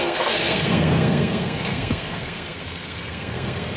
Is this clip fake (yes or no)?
yes